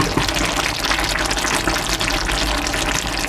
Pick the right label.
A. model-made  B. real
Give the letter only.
B